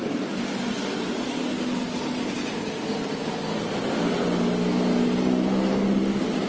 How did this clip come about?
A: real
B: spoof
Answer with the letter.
A